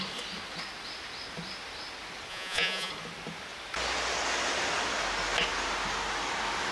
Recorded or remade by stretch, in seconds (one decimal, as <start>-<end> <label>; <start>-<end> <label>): 0.0-2.3 recorded; 2.3-2.9 remade; 2.9-6.7 recorded